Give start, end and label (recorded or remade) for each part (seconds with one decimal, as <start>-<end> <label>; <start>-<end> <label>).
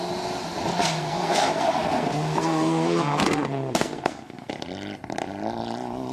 0.0-0.8 recorded; 0.8-4.5 remade; 4.5-6.1 recorded